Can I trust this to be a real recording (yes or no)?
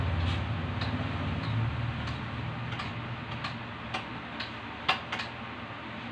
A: yes